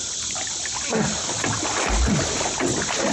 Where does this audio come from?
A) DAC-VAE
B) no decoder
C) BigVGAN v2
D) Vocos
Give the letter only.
B